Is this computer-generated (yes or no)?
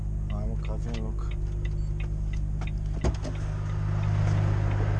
no